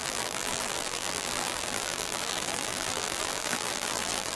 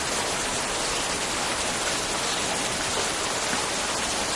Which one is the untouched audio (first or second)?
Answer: second